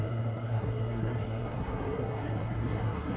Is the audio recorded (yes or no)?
no